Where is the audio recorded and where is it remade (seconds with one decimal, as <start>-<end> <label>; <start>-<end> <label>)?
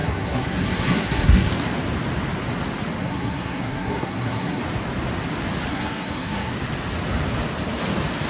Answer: 0.0-1.5 remade; 1.5-3.0 recorded; 3.0-4.6 remade; 4.6-5.7 recorded; 5.7-6.5 remade; 6.5-8.3 recorded